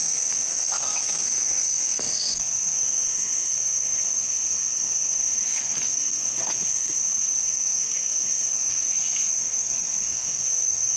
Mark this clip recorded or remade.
remade